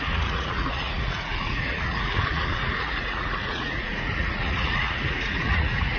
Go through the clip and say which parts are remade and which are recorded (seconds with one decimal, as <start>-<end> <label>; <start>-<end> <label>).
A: 0.0-6.0 remade